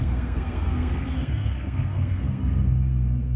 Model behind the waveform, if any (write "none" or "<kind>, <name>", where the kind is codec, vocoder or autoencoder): codec, SNAC